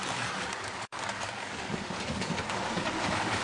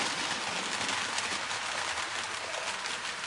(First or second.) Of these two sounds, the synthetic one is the first